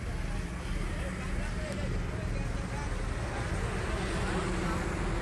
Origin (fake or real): real